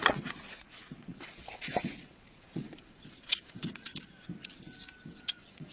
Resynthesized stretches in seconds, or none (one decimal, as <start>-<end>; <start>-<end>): 0.0-3.9; 5.1-5.7